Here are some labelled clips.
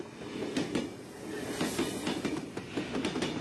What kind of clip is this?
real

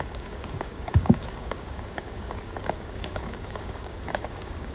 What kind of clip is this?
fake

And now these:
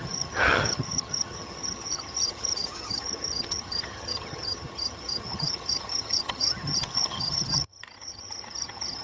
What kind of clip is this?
fake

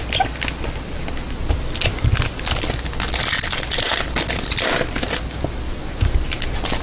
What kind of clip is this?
real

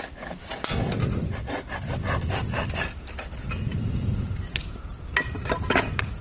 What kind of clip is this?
fake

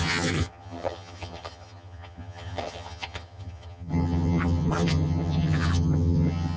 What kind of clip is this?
fake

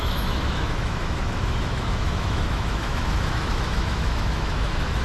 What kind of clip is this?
fake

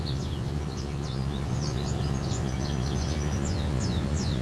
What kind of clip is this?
fake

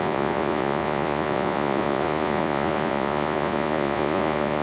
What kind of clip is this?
fake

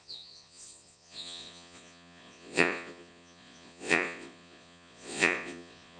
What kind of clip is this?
fake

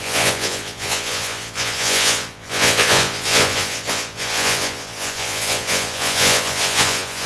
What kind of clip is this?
fake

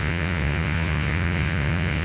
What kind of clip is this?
fake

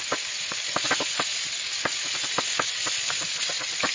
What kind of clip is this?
real